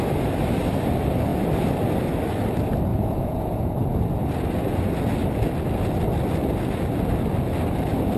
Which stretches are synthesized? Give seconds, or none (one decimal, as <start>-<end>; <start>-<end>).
2.9-3.8